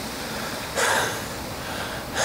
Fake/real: real